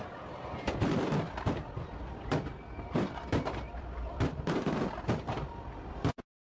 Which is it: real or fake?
fake